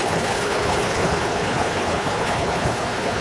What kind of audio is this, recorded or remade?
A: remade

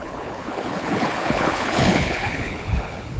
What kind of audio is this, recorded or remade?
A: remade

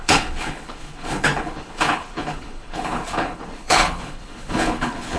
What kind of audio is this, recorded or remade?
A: remade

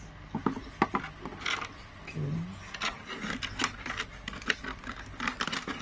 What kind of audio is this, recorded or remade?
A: recorded